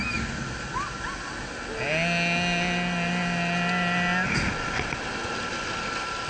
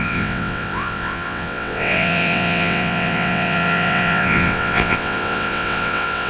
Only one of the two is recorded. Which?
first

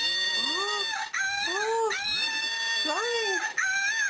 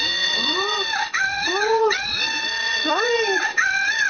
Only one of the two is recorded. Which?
first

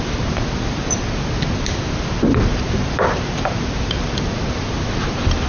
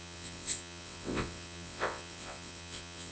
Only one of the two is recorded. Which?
first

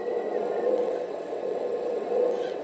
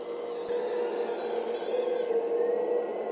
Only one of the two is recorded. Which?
second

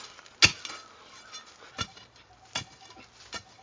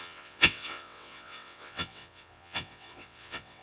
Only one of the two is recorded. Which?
first